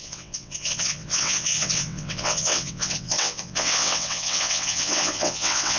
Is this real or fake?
fake